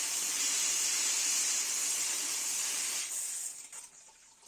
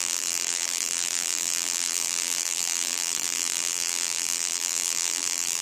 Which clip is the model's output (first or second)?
second